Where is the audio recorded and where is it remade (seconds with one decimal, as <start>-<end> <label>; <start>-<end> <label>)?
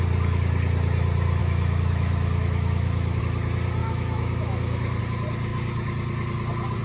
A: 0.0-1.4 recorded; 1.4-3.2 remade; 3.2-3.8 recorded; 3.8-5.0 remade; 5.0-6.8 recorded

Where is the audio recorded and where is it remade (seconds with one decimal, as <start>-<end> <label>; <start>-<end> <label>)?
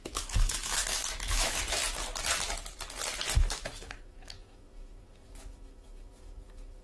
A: 0.0-1.8 remade; 1.8-3.3 recorded; 3.3-6.8 remade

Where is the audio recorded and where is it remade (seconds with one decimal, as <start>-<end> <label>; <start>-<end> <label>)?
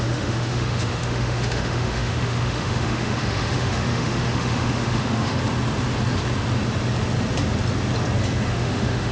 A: 0.0-5.4 remade; 5.4-8.5 recorded; 8.5-9.1 remade